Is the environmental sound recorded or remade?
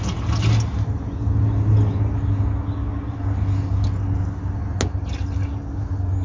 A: recorded